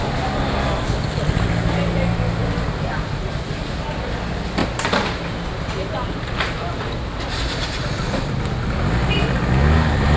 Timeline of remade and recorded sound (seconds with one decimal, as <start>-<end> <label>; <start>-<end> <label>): 0.0-4.6 recorded; 4.6-7.2 remade; 7.2-10.2 recorded